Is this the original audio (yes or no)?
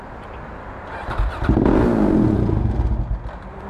no